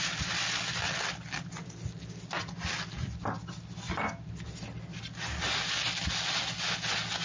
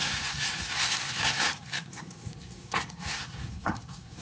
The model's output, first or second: second